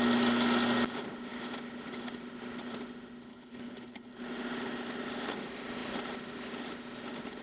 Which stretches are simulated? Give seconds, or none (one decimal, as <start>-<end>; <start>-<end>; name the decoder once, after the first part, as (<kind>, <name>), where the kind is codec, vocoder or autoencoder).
3.3-4.1 (codec, HILCodec)

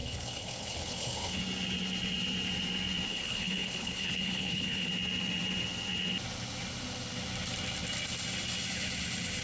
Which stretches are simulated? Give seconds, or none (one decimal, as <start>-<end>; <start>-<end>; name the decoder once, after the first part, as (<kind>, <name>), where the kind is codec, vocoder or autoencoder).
0.0-1.4 (codec, HILCodec); 3.1-4.9